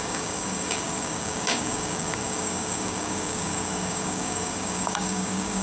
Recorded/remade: remade